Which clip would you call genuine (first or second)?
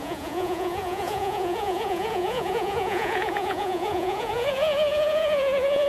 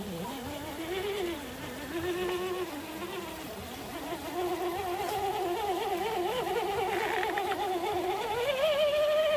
second